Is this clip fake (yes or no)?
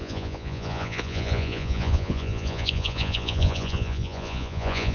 yes